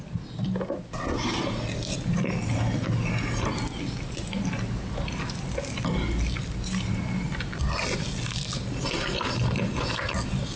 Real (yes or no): yes